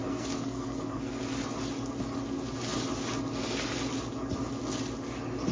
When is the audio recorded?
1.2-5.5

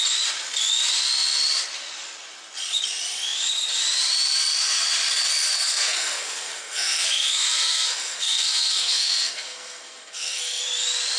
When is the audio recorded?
0.0-5.5; 10.6-11.2

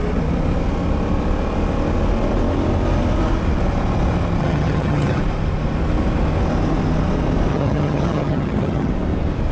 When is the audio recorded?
0.0-4.4; 5.2-7.5; 8.9-9.5

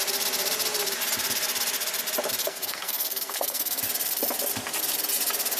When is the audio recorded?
0.0-2.4; 3.8-5.6

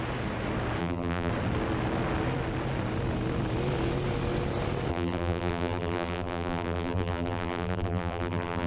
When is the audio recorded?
0.0-0.8; 1.3-4.9

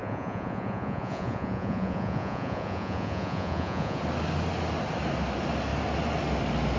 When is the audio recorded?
4.0-6.8